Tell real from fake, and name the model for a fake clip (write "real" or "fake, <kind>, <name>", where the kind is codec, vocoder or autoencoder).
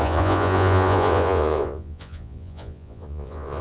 fake, vocoder, Vocos